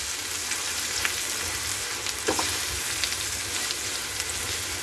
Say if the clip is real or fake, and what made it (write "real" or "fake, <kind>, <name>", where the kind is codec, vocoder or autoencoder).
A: real